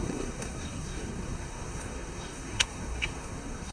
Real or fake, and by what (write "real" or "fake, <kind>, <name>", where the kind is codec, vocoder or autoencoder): fake, codec, SNAC